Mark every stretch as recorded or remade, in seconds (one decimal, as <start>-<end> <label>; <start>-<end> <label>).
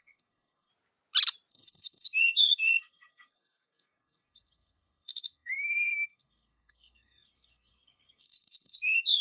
0.0-0.7 remade; 0.7-1.5 recorded; 1.5-9.2 remade